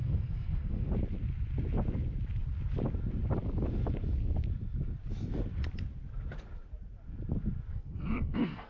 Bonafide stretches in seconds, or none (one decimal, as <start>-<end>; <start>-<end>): 0.9-7.7